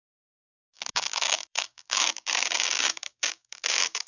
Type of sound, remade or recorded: remade